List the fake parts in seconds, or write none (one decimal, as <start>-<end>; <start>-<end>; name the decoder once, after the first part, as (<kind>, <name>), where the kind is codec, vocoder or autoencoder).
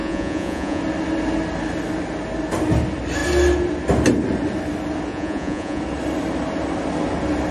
0.0-0.8 (vocoder, Vocos); 5.1-5.8